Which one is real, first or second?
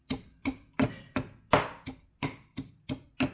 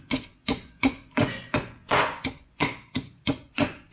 first